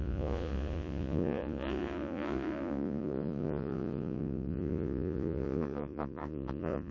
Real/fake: fake